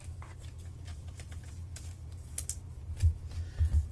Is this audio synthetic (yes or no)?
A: no